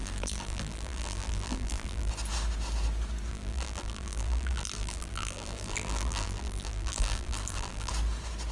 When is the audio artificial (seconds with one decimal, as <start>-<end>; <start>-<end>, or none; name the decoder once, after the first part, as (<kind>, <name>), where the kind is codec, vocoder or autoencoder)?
0.0-2.1 (vocoder, BigVGAN v2); 3.3-7.9